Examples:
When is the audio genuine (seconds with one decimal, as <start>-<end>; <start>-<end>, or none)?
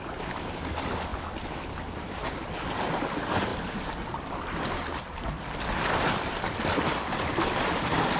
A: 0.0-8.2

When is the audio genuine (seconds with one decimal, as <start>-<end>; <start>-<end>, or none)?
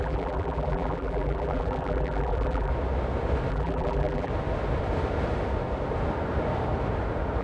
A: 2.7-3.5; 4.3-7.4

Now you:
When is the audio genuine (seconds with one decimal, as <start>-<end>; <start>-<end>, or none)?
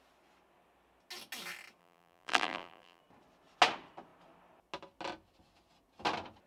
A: 0.0-1.8; 3.0-6.5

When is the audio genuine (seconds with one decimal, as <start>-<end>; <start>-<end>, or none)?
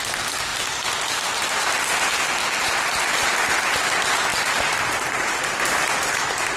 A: 0.0-0.5; 1.6-4.3; 5.5-6.6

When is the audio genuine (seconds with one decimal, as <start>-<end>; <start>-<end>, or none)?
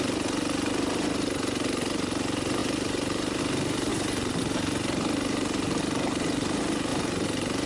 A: 0.0-2.6; 3.4-3.9; 4.4-6.9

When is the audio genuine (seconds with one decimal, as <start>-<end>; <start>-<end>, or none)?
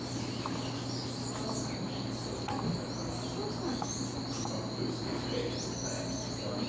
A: 0.0-6.7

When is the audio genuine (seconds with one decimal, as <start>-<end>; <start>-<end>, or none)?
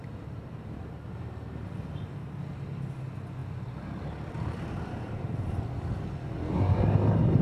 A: 1.8-3.4; 5.5-7.4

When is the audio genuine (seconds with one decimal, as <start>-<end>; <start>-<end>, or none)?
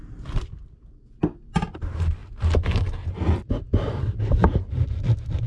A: 0.0-5.5